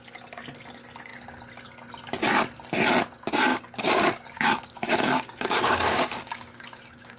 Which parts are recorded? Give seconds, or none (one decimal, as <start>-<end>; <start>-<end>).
0.0-3.5